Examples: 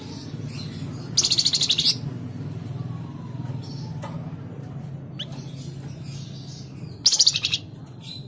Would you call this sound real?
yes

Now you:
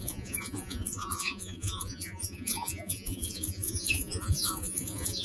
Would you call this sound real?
no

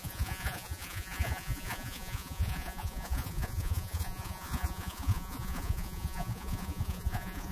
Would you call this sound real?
no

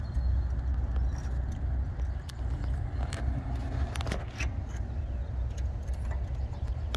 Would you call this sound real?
yes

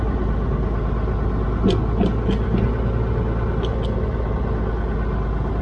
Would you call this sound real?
yes